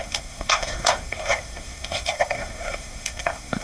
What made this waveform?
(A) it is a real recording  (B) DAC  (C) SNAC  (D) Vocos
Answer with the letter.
C